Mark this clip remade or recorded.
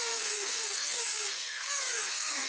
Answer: remade